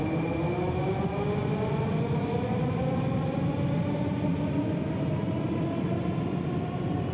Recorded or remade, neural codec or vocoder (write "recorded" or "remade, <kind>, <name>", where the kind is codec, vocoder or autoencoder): recorded